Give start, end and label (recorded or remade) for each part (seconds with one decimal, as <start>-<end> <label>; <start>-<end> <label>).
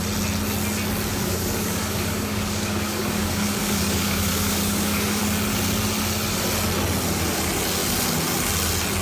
0.0-1.1 recorded; 1.1-5.2 remade; 5.2-9.0 recorded